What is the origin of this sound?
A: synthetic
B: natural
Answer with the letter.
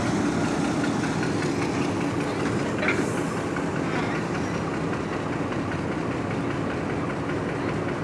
B